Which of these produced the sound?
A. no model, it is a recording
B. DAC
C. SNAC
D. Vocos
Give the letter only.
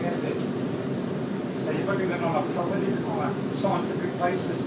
A